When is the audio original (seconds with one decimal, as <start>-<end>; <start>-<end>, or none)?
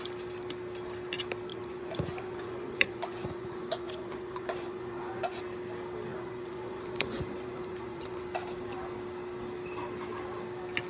0.0-1.5; 5.4-6.1; 8.2-10.9